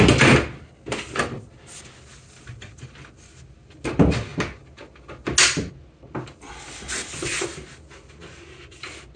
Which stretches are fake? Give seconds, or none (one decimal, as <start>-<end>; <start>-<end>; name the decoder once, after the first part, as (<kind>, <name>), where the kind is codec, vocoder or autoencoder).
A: none